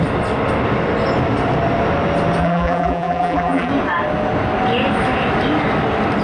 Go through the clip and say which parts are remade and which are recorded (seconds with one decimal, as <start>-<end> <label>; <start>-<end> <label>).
0.0-2.4 recorded; 2.4-3.7 remade; 3.7-6.2 recorded